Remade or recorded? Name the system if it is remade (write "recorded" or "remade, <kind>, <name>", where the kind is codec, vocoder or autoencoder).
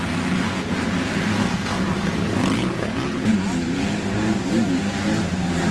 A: recorded